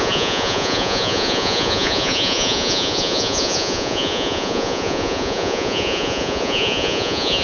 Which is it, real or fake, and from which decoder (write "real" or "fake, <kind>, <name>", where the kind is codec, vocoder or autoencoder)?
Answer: fake, vocoder, Vocos